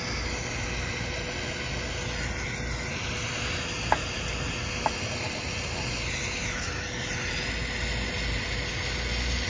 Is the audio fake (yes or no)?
no